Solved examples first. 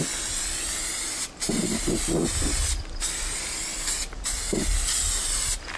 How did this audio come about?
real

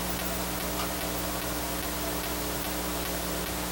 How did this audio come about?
real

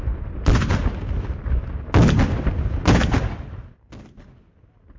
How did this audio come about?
real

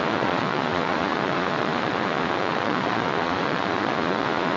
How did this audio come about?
fake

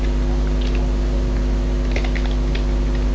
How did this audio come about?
real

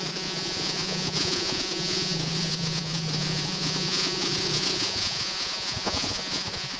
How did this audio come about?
fake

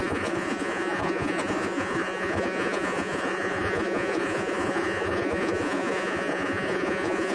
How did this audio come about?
fake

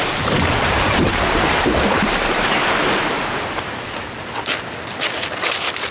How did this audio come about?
real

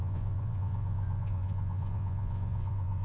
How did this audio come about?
fake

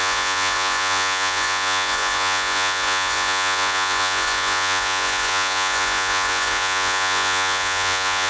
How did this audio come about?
fake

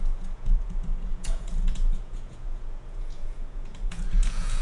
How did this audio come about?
fake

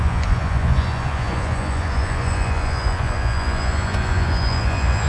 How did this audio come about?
fake